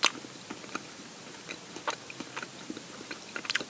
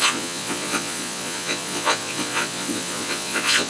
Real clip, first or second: first